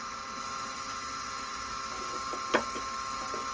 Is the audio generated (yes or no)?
no